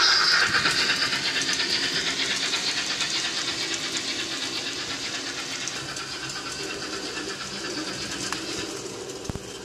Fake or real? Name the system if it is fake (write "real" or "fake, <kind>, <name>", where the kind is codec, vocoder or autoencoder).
real